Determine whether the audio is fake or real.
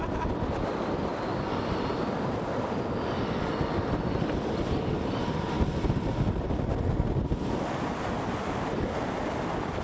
real